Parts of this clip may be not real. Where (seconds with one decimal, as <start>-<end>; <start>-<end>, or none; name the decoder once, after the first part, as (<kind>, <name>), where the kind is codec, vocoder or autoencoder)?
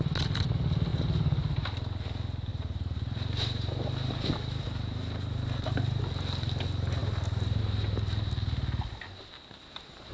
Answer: 0.9-1.5 (vocoder, BigVGAN v2); 2.5-6.0; 7.0-7.6